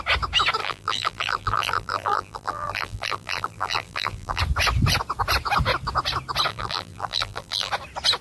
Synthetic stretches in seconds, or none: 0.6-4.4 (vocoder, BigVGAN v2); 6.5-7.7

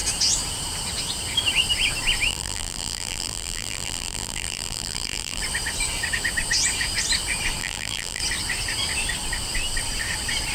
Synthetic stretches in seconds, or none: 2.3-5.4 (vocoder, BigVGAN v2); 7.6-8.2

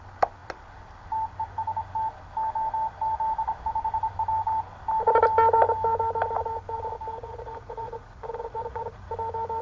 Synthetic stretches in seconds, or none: 7.2-9.1 (vocoder, Vocos)

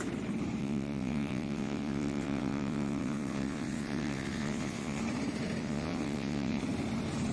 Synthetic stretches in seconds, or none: 0.6-5.0 (vocoder, WaveNeXt); 5.6-6.6